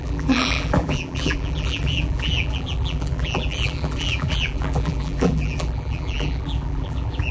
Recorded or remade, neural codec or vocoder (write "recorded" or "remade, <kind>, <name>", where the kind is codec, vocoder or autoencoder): remade, vocoder, BigVGAN v2